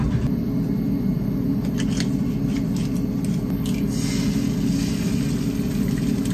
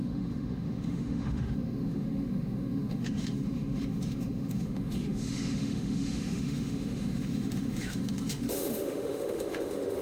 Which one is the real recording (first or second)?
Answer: first